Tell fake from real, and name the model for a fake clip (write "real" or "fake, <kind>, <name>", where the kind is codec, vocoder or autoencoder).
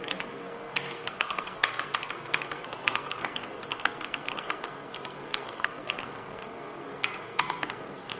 fake, codec, SNAC